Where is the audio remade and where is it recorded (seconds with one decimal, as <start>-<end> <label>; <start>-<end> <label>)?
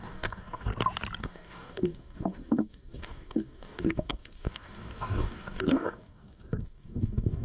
0.0-0.7 remade; 0.7-1.2 recorded; 1.2-7.4 remade